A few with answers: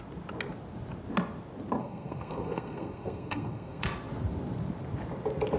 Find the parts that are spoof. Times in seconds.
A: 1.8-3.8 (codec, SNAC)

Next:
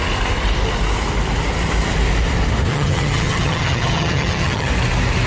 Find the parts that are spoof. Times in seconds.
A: 2.7-4.7 (vocoder, HiFi-GAN)

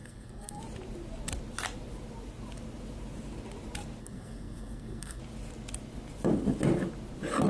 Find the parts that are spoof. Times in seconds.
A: 0.0-0.6 (codec, SNAC); 4.0-5.2

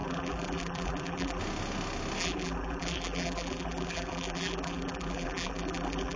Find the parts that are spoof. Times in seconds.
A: 0.0-1.4 (vocoder, BigVGAN v2); 2.2-6.2

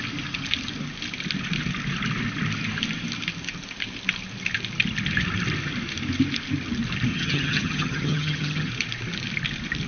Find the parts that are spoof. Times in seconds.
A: 7.1-8.7 (vocoder, HiFi-GAN)

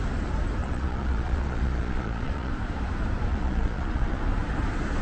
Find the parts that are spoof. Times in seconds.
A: 0.6-2.5 (vocoder, Vocos); 3.3-4.2

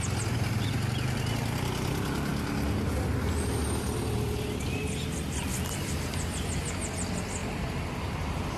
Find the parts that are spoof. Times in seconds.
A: 7.4-8.6 (vocoder, BigVGAN v2)

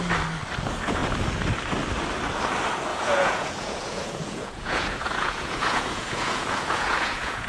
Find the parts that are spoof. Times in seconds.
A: 2.9-7.5 (vocoder, Vocos)